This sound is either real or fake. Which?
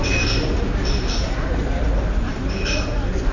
fake